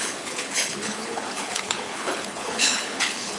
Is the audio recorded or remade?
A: remade